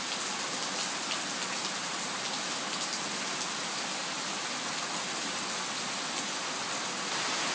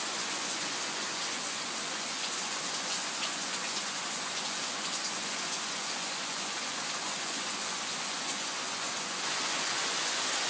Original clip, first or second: first